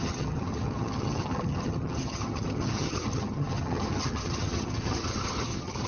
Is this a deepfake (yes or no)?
yes